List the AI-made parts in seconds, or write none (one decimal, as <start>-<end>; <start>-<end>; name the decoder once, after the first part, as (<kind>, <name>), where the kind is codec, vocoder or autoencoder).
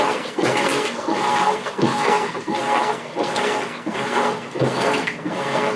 0.0-5.8 (codec, SNAC)